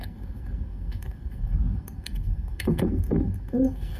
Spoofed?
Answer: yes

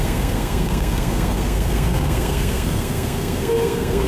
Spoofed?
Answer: yes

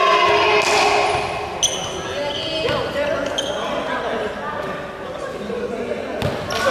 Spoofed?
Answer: no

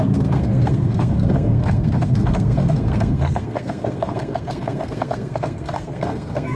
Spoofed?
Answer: yes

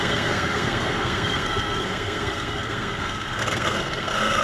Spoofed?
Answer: yes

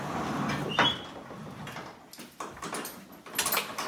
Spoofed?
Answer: no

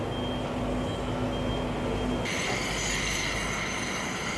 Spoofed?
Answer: no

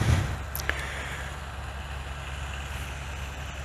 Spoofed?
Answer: no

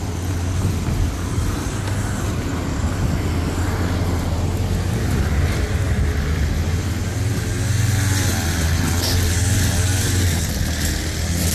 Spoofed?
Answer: no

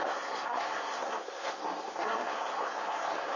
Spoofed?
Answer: yes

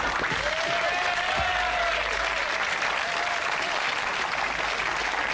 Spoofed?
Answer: no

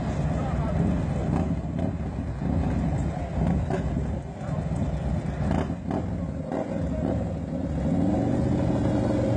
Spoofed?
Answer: no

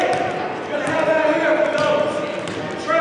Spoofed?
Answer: no